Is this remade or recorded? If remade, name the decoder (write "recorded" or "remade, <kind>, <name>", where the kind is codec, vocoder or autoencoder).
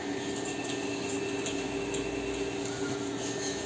recorded